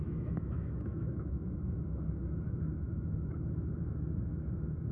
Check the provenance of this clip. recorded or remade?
remade